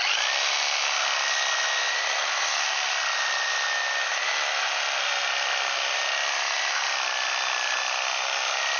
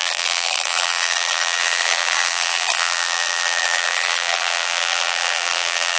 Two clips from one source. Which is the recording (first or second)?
first